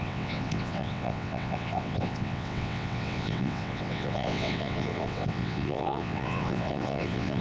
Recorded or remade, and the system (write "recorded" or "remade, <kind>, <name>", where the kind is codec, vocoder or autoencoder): remade, vocoder, WaveNeXt